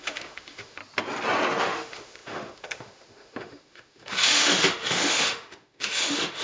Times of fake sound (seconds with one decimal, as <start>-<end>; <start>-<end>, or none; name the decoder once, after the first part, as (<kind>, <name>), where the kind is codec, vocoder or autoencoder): 0.0-0.8 (autoencoder, DAC-VAE); 1.6-6.4